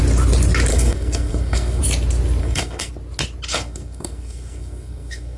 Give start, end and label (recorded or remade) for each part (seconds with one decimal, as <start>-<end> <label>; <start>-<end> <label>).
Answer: 0.0-0.7 recorded; 0.7-1.8 remade; 1.8-2.4 recorded; 2.4-2.9 remade; 2.9-3.5 recorded; 3.5-5.4 remade